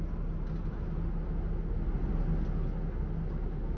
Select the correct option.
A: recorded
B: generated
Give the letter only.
A